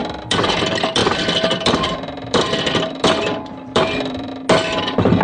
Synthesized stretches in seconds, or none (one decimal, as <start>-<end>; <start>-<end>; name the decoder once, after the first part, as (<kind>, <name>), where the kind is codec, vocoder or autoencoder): 0.0-4.3 (vocoder, BigVGAN v2); 4.8-5.2